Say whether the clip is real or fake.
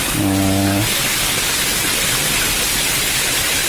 real